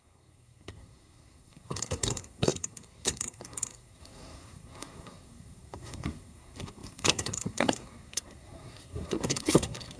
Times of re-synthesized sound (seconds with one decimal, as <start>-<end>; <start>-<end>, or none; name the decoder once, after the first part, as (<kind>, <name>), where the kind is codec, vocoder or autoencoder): 0.0-10.0 (codec, SNAC)